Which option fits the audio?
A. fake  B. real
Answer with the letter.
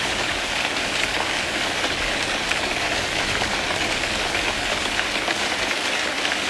A